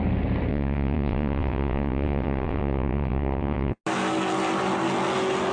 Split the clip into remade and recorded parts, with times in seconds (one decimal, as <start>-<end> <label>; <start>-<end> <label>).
0.0-0.5 recorded; 0.5-3.8 remade; 3.8-5.5 recorded

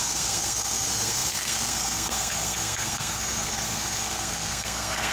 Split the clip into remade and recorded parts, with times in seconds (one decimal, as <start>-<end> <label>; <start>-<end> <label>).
0.0-5.1 remade

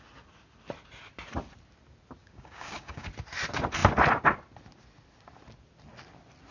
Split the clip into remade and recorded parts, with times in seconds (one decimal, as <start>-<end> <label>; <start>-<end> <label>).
0.0-2.2 recorded; 2.2-3.1 remade; 3.1-6.5 recorded

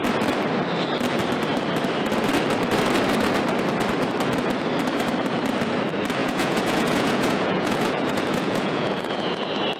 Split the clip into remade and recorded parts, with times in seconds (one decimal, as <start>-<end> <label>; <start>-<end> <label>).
0.0-6.2 recorded; 6.2-9.4 remade; 9.4-9.8 recorded

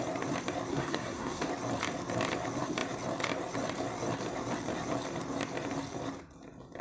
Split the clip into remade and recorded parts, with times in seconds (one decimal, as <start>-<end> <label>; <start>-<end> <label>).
0.0-0.7 recorded; 0.7-1.5 remade; 1.5-6.8 recorded

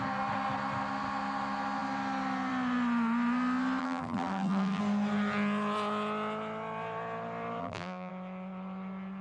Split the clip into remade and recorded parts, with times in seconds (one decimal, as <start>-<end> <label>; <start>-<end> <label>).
0.0-3.8 recorded; 3.8-4.8 remade; 4.8-7.6 recorded; 7.6-8.1 remade; 8.1-9.2 recorded

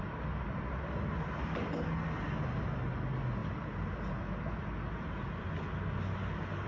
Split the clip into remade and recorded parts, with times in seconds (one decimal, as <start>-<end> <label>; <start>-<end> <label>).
0.0-6.7 recorded

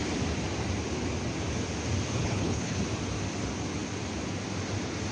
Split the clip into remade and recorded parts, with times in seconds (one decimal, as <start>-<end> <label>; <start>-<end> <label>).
0.0-2.2 recorded; 2.2-2.8 remade; 2.8-5.1 recorded